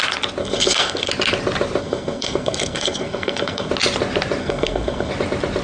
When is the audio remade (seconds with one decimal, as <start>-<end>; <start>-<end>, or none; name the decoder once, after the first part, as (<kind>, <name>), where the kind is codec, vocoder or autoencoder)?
0.4-1.1 (codec, SNAC); 1.8-3.7; 4.4-5.1

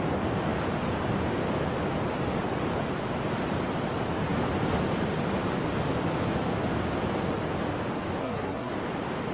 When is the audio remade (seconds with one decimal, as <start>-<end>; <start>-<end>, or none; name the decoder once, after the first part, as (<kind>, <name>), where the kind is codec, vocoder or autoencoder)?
8.2-8.7 (codec, SNAC)

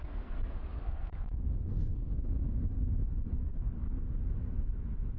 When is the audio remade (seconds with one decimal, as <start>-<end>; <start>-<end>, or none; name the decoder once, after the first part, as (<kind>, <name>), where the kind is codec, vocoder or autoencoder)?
0.0-2.1 (codec, SNAC)

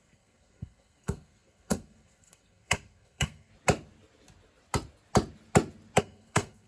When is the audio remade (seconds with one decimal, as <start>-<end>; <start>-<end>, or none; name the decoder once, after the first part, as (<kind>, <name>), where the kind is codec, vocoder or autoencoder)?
0.0-3.5 (codec, SNAC); 6.0-6.7

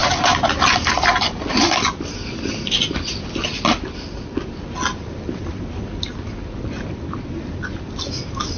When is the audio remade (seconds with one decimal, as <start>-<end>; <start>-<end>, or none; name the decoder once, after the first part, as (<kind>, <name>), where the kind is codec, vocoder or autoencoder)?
none

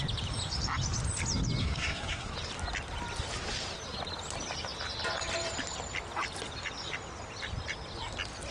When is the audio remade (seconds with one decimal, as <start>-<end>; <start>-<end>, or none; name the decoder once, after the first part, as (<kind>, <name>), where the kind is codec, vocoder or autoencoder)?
1.6-2.3 (codec, SNAC)